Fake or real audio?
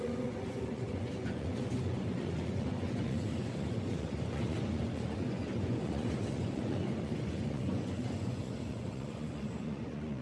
fake